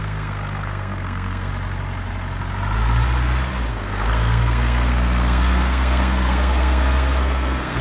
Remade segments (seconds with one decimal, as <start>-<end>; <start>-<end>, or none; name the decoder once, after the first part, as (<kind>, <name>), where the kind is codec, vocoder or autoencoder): 0.0-1.5 (codec, SNAC); 3.7-7.8